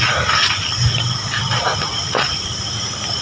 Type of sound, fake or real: real